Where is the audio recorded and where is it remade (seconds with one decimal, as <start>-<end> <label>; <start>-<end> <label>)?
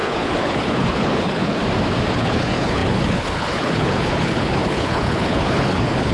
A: 0.0-1.6 remade; 1.6-2.1 recorded; 2.1-6.1 remade